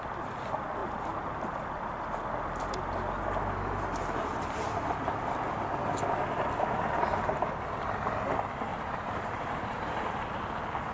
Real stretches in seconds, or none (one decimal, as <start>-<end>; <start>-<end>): 0.0-0.8; 1.5-8.7; 10.5-10.9